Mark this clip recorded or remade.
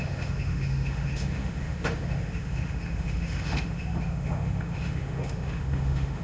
remade